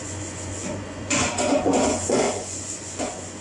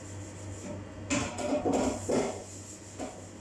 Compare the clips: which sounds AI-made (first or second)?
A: first